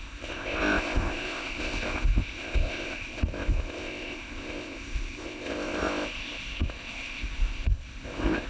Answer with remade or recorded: remade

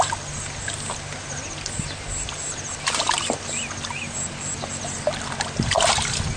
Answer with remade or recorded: recorded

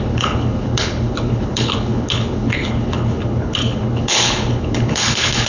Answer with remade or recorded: remade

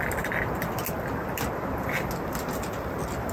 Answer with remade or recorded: recorded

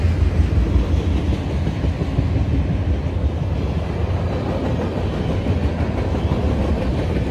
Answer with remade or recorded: recorded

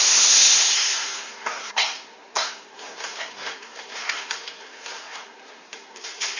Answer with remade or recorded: remade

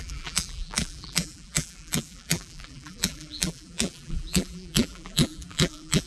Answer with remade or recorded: remade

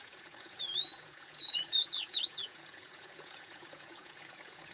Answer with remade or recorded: remade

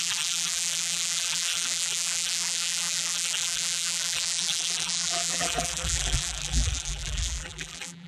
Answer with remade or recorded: remade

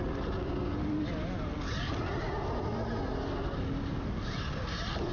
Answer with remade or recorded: recorded